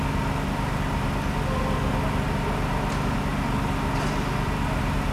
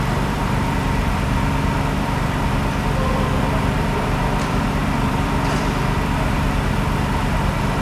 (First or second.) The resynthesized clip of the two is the second